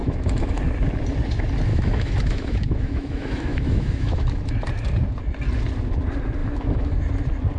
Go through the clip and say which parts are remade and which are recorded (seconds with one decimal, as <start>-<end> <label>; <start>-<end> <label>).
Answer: 0.0-0.6 remade; 0.6-1.7 recorded; 1.7-4.5 remade; 4.5-6.4 recorded; 6.4-7.0 remade; 7.0-7.6 recorded